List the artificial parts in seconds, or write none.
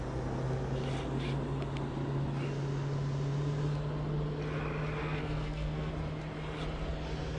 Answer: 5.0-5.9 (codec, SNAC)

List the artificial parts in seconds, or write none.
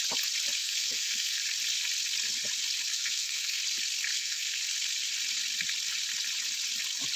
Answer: 0.6-1.4 (codec, SNAC); 2.9-3.6; 4.1-4.6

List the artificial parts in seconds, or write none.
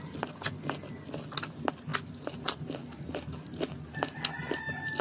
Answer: none